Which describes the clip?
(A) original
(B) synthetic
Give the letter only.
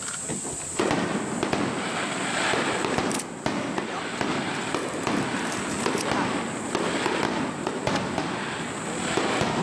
A